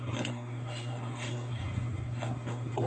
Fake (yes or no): yes